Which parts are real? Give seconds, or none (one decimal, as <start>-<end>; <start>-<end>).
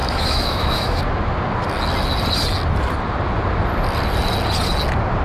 1.0-5.2